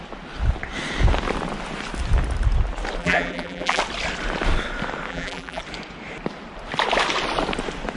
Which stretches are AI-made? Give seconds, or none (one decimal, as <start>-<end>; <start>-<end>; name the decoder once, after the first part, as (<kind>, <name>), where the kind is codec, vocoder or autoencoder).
3.0-3.8 (vocoder, BigVGAN v2); 5.1-5.6